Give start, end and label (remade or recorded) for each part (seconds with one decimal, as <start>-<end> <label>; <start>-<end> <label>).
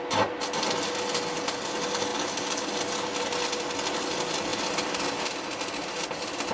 0.0-6.5 recorded